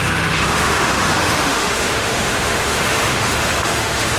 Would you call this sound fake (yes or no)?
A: yes